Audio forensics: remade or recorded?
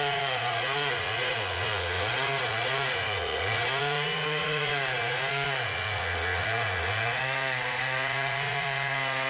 remade